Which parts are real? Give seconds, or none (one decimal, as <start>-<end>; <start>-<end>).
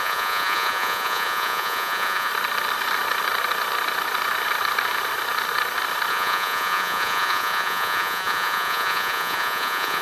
2.3-6.1